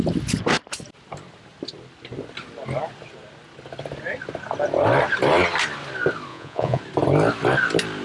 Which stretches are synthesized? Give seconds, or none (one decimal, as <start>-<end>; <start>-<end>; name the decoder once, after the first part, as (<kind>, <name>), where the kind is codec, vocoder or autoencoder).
6.3-6.8 (vocoder, Vocos)